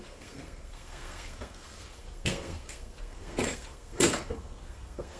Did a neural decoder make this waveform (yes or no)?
yes